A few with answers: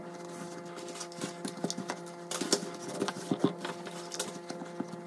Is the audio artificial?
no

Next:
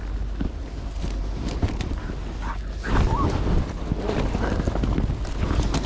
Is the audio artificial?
no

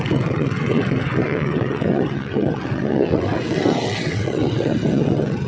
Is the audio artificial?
yes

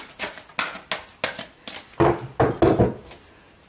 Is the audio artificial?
no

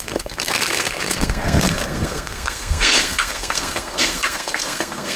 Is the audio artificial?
yes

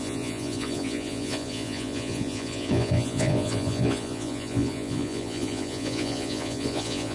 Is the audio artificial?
yes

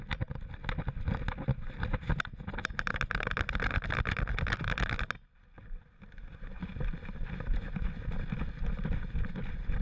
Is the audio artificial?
no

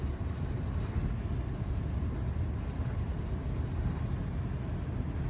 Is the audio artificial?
no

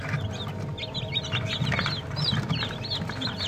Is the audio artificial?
no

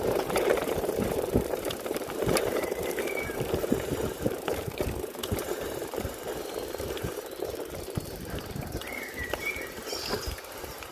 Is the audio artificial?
yes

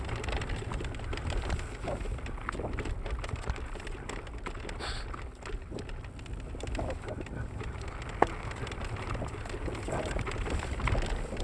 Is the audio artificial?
no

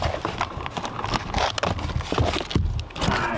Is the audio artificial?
no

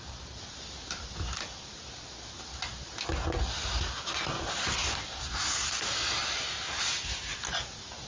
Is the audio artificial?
no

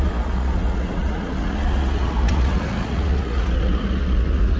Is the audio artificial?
yes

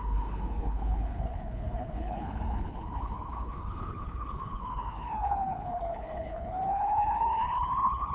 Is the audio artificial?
yes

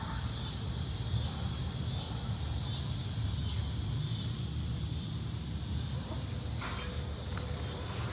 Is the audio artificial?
no